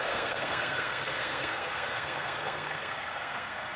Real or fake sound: fake